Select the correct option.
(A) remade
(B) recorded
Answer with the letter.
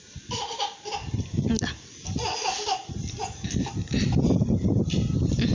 B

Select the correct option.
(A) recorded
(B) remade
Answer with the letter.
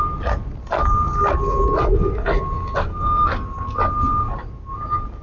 A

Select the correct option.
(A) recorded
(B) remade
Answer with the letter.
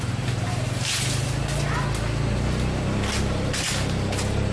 A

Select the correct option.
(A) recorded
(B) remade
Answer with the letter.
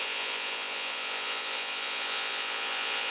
B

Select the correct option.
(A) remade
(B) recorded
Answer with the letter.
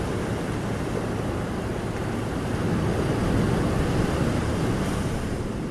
B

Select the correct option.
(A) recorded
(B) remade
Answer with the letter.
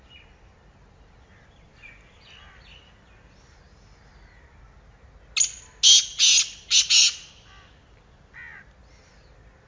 A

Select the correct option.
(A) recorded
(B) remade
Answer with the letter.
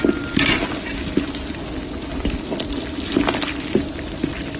A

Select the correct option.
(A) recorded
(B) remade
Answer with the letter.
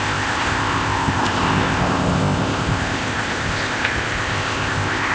B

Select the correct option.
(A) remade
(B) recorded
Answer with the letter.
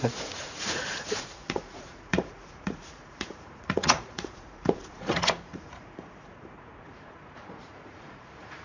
A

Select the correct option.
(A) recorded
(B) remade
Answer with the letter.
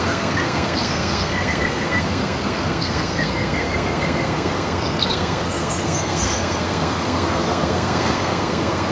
B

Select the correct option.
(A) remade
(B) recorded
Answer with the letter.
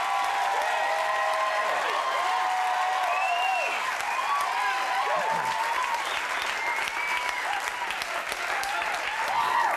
B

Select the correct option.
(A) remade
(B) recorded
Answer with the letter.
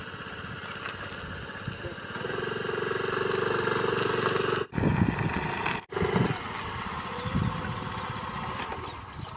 B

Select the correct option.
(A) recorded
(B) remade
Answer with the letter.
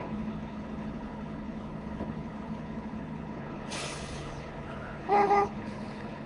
B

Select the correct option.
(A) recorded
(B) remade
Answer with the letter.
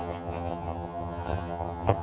B